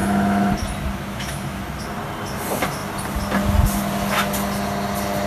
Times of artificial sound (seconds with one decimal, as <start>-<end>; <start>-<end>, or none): 0.0-0.5; 1.1-1.6